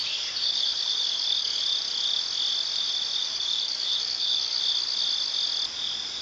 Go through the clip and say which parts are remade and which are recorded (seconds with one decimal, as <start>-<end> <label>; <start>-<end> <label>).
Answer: 0.0-1.6 remade; 1.6-3.2 recorded; 3.2-4.6 remade; 4.6-6.2 recorded